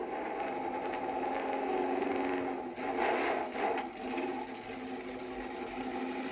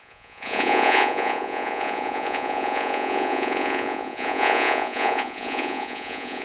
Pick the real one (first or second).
first